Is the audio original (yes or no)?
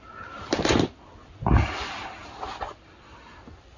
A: yes